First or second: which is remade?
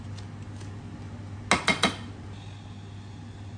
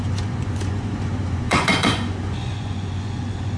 second